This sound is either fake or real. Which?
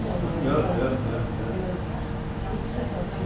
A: real